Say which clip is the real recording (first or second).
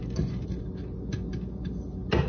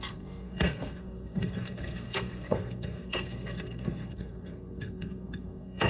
first